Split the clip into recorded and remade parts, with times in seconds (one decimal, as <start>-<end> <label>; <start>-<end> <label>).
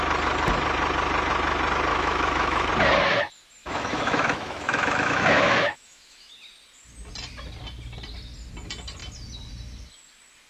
0.0-1.9 recorded; 1.9-2.7 remade; 2.7-3.6 recorded; 3.6-6.3 remade; 6.3-10.5 recorded